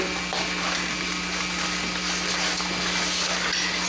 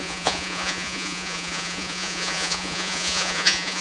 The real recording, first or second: first